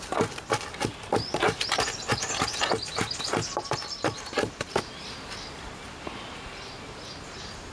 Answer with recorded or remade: recorded